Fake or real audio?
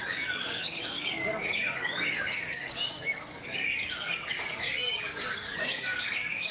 fake